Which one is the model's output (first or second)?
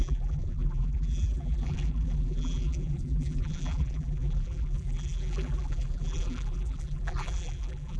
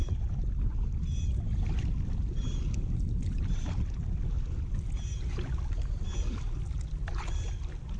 first